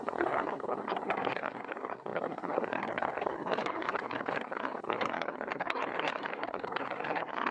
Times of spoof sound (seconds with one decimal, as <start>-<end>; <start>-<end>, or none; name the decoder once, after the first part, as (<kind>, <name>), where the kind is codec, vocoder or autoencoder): 0.0-7.5 (codec, SNAC)